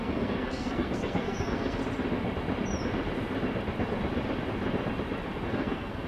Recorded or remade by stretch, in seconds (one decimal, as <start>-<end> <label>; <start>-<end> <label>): 0.0-1.8 remade; 1.8-5.5 recorded; 5.5-6.1 remade